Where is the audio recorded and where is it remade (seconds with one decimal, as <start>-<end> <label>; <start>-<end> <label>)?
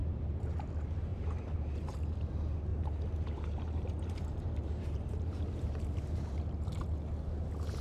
0.0-0.7 remade; 0.7-1.1 recorded; 1.1-2.3 remade; 2.3-2.7 recorded; 2.7-6.7 remade; 6.7-7.8 recorded